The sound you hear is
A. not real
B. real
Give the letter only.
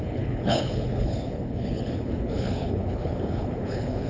A